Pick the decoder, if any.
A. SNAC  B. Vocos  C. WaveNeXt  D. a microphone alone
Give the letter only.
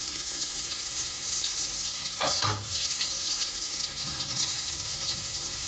A